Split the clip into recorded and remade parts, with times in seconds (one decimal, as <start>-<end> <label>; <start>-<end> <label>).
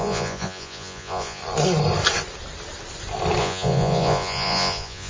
0.0-1.4 remade; 1.4-3.4 recorded; 3.4-5.1 remade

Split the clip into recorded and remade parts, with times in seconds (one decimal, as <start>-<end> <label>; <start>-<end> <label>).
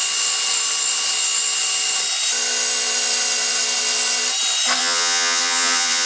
0.0-4.8 recorded; 4.8-6.1 remade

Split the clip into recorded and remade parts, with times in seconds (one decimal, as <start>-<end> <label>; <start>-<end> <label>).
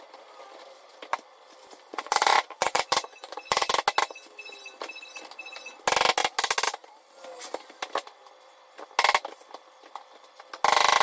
0.0-1.9 recorded; 1.9-3.7 remade; 3.7-11.0 recorded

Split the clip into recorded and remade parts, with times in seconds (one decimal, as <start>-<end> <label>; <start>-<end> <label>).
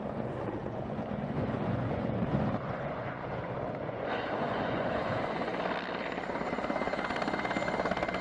0.0-5.5 remade; 5.5-8.2 recorded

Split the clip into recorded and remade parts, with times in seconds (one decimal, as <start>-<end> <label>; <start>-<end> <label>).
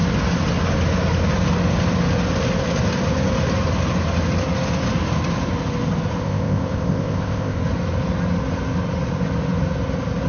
0.0-6.2 recorded; 6.2-7.6 remade; 7.6-10.3 recorded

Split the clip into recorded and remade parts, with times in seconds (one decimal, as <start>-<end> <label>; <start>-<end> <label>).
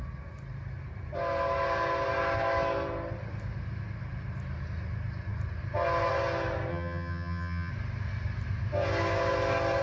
0.0-6.7 recorded; 6.7-7.7 remade; 7.7-9.8 recorded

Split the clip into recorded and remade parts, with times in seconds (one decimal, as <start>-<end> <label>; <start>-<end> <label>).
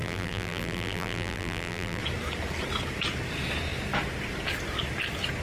0.0-2.0 remade; 2.0-5.4 recorded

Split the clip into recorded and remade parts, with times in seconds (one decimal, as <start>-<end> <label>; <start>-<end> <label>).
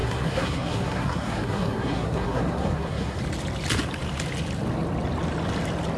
0.0-3.2 remade; 3.2-6.0 recorded